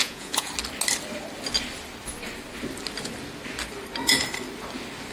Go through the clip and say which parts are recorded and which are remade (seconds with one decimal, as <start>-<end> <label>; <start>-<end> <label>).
0.0-0.5 remade; 0.5-5.1 recorded